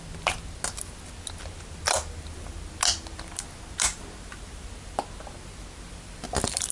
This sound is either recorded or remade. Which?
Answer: recorded